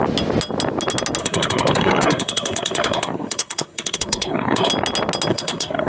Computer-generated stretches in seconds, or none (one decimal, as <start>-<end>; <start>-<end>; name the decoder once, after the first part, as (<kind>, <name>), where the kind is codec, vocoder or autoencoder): 1.2-4.7 (codec, SNAC); 5.3-5.9